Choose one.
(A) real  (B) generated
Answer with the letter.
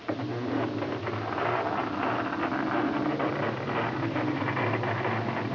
A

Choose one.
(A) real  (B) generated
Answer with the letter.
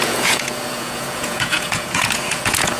B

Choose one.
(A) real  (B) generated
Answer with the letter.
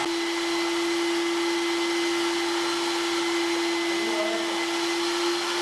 A